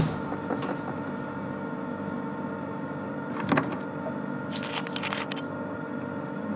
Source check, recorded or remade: recorded